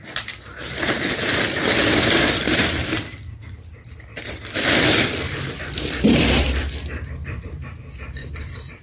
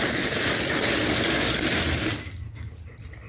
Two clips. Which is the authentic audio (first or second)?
second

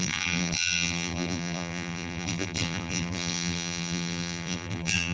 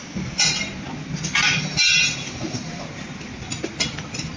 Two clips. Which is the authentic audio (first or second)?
second